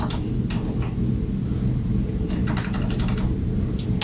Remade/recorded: recorded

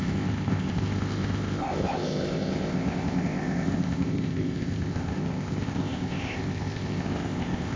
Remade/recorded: remade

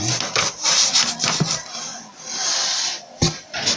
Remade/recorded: recorded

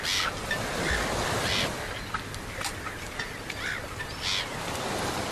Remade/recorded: recorded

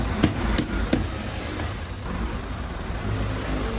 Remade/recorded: recorded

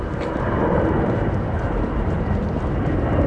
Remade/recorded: remade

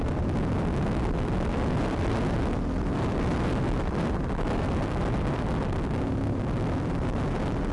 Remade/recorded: remade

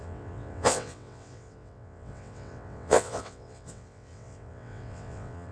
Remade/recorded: remade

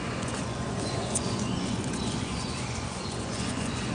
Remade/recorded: remade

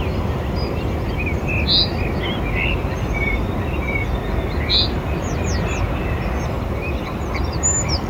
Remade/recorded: recorded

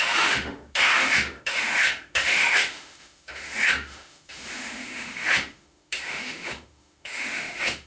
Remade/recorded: remade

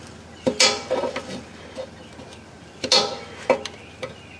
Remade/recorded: recorded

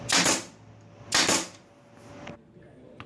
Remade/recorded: recorded